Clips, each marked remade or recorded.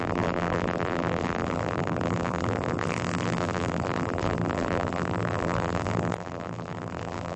remade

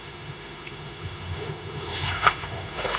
remade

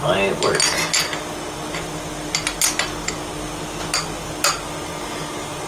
recorded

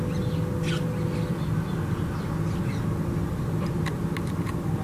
recorded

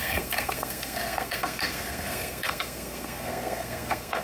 remade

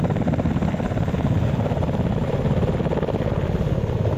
recorded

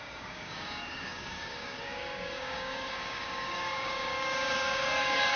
remade